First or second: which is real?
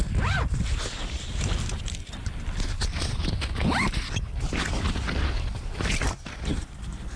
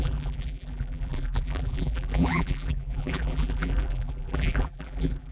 first